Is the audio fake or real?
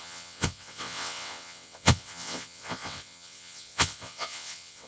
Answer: fake